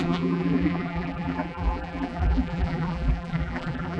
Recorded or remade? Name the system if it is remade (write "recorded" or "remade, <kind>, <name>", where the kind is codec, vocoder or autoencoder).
remade, vocoder, BigVGAN v2